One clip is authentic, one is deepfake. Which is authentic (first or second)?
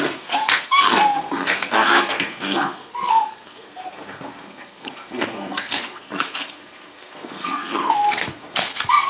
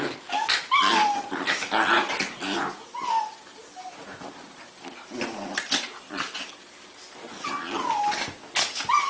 second